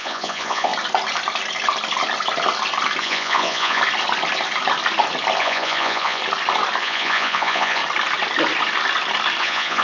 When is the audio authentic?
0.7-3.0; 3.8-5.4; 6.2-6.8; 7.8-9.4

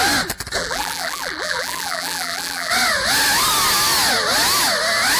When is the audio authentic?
0.0-0.6; 2.7-5.2